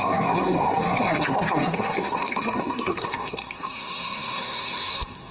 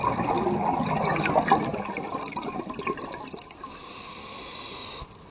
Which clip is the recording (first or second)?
second